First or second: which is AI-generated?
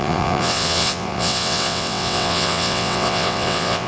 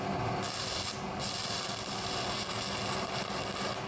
first